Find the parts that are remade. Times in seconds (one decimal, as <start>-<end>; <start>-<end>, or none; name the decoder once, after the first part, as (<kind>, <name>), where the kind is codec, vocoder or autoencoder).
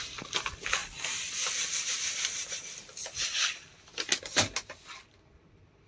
none